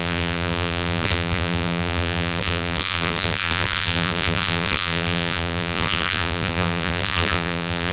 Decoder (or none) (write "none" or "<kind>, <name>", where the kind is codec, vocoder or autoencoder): vocoder, BigVGAN v2